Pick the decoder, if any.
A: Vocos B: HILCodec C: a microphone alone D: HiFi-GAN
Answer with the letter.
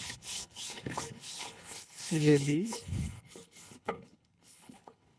B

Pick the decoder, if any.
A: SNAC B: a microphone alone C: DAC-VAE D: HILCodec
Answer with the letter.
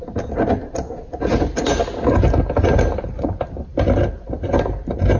B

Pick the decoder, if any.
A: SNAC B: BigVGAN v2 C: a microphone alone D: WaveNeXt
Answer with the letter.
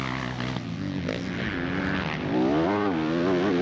C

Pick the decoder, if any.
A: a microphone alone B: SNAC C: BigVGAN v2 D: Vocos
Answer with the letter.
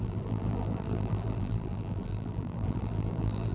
C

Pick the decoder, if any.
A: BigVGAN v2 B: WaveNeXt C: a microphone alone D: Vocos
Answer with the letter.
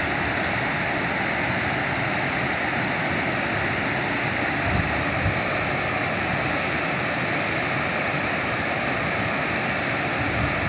C